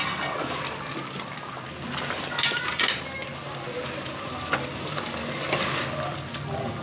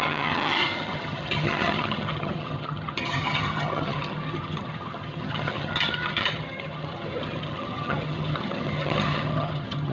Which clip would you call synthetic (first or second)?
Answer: second